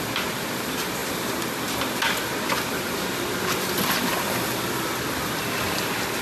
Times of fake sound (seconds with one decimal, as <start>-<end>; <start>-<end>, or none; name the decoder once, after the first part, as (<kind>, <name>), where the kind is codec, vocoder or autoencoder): none